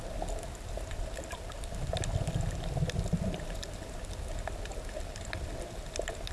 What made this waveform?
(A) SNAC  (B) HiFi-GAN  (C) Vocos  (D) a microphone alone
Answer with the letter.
D